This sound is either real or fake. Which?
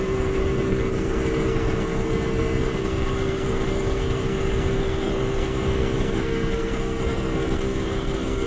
fake